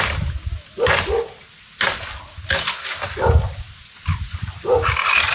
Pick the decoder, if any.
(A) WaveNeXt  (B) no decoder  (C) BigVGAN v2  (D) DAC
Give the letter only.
B